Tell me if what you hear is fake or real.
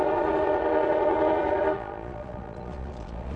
fake